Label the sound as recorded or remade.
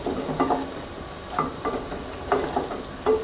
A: recorded